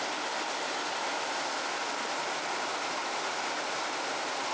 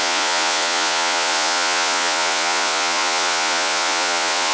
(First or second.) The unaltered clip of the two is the first